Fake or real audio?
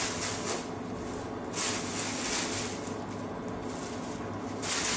real